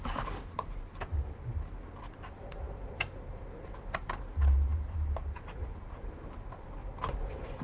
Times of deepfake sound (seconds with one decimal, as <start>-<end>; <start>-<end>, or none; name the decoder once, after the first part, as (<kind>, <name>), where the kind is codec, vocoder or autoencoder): 0.0-1.1 (vocoder, BigVGAN v2); 2.0-7.6